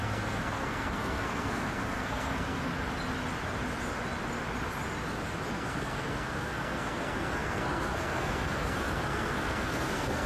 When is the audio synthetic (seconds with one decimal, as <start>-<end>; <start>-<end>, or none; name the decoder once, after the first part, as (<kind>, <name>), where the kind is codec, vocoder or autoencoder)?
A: 0.0-2.7 (codec, SNAC); 5.5-10.3